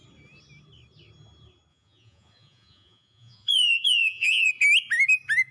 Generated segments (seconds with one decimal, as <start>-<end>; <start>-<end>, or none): 1.7-4.5